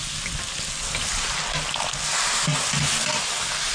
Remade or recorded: recorded